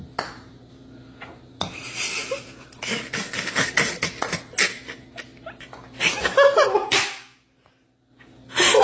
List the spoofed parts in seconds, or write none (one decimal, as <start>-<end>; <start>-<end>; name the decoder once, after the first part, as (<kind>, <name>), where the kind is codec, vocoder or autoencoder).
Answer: none